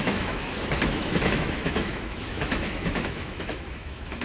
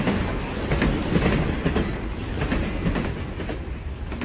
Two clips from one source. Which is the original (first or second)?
second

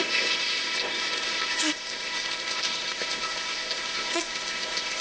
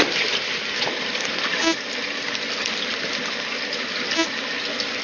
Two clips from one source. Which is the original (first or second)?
second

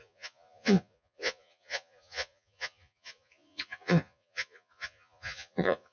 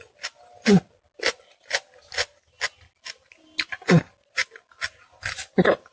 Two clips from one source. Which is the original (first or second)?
second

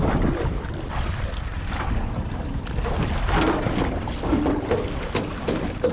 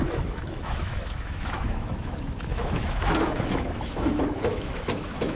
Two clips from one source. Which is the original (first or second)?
first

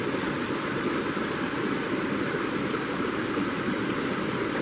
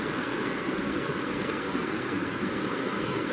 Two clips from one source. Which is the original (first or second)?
first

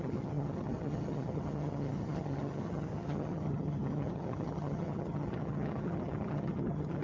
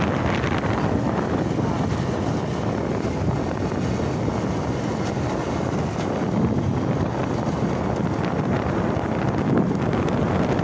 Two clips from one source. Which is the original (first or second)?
second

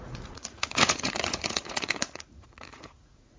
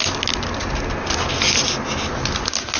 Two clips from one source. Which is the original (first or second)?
second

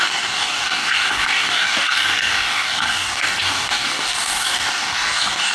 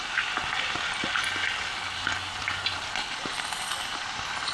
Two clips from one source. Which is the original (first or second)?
second